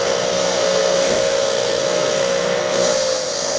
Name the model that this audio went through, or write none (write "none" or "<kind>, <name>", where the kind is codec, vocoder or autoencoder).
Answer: codec, SNAC